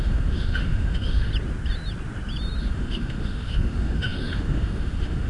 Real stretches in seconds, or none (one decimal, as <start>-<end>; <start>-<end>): 1.3-2.6